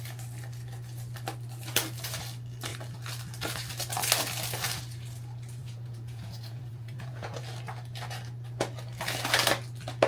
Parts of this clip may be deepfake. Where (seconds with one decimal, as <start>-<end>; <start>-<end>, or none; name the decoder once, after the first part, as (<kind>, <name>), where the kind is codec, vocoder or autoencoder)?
5.6-7.4 (vocoder, Vocos)